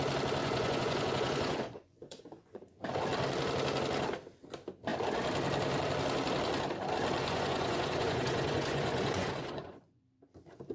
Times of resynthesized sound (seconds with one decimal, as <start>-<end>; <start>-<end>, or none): 0.4-2.6; 7.2-10.0